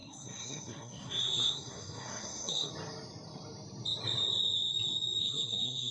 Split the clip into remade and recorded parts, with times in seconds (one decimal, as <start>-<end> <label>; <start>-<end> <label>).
0.0-2.7 remade; 2.7-5.2 recorded; 5.2-5.9 remade